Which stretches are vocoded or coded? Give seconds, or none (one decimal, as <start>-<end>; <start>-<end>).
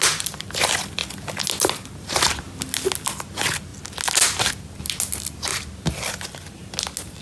none